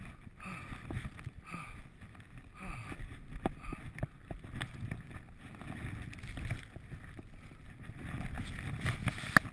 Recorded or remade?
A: recorded